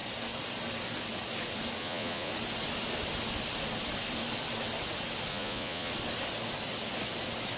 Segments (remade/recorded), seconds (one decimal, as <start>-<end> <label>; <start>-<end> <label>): 0.0-1.8 recorded; 1.8-2.3 remade; 2.3-5.3 recorded; 5.3-5.9 remade; 5.9-7.6 recorded